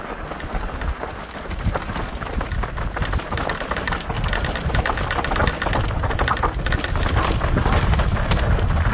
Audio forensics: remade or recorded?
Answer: recorded